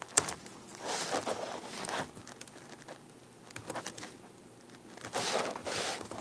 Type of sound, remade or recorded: recorded